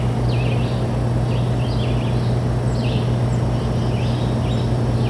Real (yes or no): yes